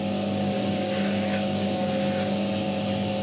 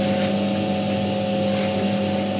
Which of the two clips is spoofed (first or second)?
first